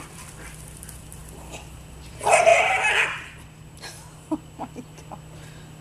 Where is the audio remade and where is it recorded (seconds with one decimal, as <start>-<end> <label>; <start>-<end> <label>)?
0.0-1.2 remade; 1.2-2.1 recorded; 2.1-2.5 remade; 2.5-5.8 recorded